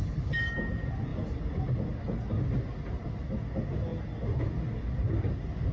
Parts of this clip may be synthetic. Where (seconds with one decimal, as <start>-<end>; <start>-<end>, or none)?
none